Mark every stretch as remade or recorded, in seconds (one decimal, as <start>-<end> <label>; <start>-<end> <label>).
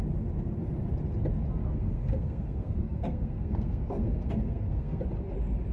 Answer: 0.0-1.6 recorded; 1.6-5.0 remade; 5.0-5.7 recorded